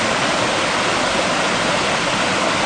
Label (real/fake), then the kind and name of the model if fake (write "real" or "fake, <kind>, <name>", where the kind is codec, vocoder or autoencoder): real